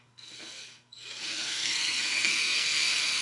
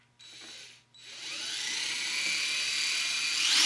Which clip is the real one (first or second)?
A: second